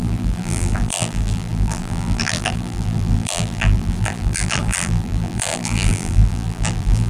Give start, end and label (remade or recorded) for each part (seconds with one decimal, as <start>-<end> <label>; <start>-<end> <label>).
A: 0.0-7.1 remade